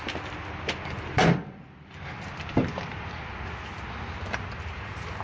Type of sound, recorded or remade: recorded